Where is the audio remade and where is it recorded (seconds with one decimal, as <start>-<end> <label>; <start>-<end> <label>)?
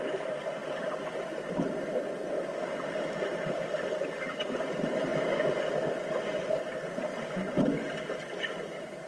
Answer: 0.0-9.1 recorded